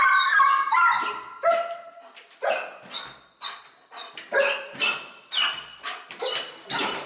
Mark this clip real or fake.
real